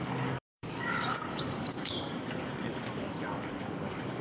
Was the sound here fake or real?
fake